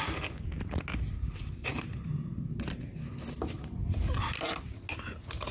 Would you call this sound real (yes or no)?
yes